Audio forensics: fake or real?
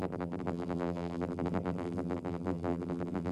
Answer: fake